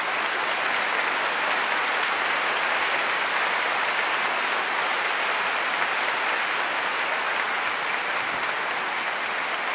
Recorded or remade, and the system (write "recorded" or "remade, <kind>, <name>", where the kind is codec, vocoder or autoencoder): recorded